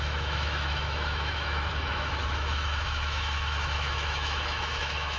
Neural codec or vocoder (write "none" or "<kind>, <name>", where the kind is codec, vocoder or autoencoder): autoencoder, DAC-VAE